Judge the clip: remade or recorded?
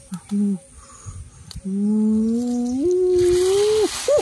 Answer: recorded